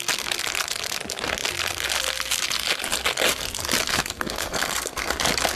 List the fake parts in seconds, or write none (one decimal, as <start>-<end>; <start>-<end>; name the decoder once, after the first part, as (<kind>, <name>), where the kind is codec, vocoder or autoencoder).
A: 3.9-5.1 (codec, SNAC)